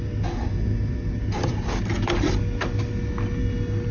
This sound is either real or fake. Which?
real